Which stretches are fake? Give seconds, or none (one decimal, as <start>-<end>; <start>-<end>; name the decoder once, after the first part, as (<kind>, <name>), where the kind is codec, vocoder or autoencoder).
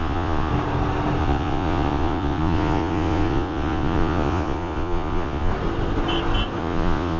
0.0-0.5 (vocoder, Vocos); 1.2-5.5; 6.6-7.2